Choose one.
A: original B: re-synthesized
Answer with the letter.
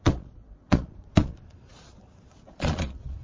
B